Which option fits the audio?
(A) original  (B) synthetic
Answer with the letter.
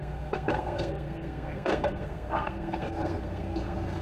B